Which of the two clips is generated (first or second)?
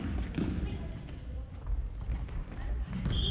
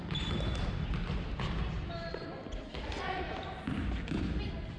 first